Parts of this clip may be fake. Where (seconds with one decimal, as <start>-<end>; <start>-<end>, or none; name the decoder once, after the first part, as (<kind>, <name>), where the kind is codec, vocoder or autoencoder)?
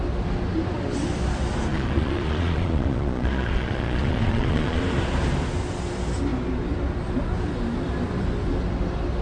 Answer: 1.7-4.8 (vocoder, Vocos)